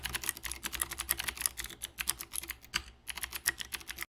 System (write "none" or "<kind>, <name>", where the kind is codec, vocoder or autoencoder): none